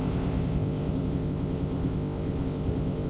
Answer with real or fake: fake